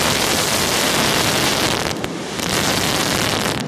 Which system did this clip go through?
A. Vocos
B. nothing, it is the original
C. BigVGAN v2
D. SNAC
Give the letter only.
C